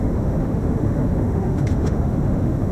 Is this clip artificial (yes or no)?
yes